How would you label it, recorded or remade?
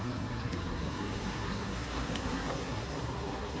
remade